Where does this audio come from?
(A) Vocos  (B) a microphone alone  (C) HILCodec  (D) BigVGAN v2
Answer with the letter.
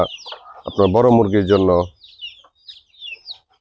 B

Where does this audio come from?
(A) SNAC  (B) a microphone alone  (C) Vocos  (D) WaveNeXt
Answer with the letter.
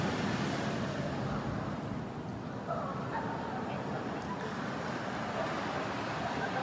B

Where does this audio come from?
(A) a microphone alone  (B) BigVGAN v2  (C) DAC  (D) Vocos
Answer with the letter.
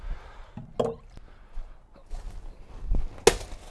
A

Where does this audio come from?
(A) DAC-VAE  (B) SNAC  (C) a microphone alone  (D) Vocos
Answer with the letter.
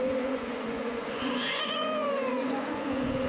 D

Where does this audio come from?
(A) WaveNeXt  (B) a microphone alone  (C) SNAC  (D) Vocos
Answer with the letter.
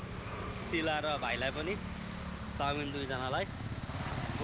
B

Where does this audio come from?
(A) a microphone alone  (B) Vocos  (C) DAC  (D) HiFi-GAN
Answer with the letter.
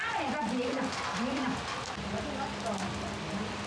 A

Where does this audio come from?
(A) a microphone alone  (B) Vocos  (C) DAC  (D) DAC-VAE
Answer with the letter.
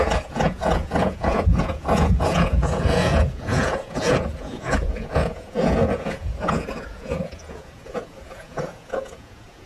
B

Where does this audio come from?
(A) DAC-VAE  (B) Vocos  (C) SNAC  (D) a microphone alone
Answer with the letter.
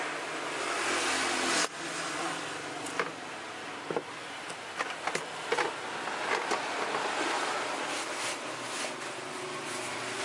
D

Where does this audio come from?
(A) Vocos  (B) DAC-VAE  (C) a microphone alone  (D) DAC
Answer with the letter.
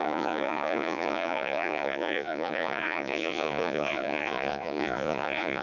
A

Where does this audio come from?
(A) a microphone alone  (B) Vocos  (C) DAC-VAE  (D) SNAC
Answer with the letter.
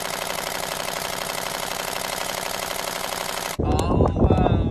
A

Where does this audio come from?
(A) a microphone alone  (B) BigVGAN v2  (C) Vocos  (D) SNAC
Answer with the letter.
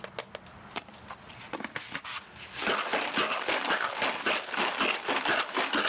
A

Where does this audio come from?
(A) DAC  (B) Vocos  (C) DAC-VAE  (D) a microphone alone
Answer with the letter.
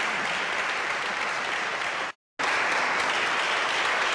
D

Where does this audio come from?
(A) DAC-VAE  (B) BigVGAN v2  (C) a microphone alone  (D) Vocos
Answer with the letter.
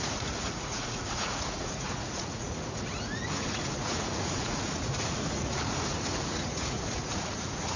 D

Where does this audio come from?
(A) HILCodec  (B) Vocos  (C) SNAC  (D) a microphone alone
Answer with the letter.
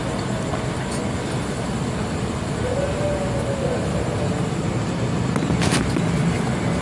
D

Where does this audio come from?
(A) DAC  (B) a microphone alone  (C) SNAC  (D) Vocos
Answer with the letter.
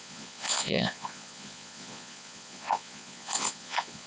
D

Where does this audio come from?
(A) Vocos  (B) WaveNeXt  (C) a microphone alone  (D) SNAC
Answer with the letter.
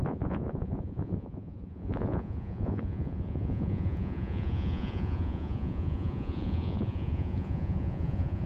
A